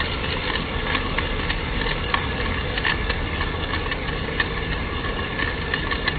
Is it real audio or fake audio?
real